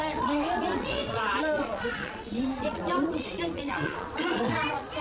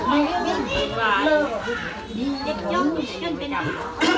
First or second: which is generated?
first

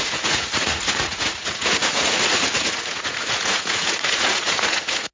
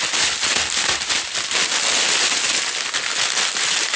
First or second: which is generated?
first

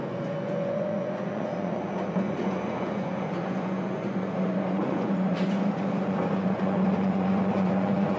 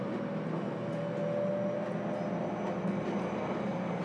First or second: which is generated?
first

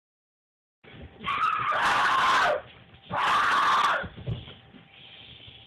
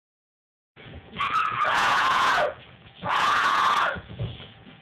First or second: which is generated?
second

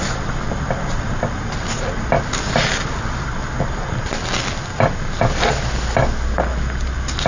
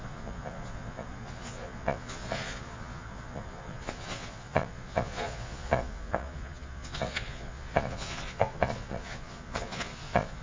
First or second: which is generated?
second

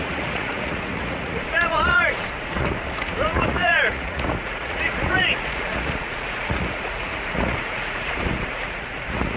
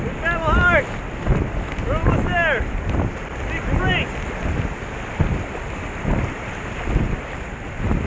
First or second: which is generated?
first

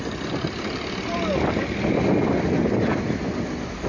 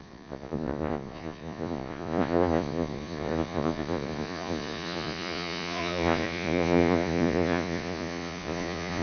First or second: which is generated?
second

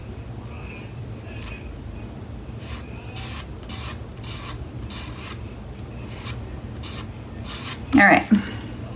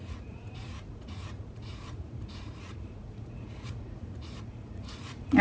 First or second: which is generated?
second